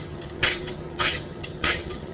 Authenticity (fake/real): fake